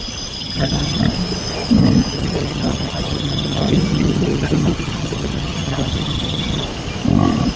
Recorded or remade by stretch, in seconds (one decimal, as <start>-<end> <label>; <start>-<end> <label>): 0.0-0.4 recorded; 0.4-1.0 remade; 1.0-2.0 recorded; 2.0-6.6 remade; 6.6-7.6 recorded